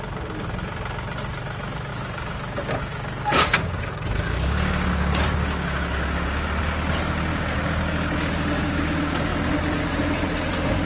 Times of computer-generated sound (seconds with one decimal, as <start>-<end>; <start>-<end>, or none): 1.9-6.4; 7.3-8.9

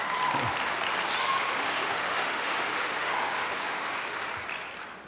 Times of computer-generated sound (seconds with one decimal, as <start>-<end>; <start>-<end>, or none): 1.2-4.3

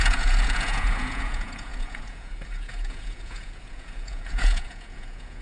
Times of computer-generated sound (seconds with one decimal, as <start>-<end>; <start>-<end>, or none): 0.0-5.4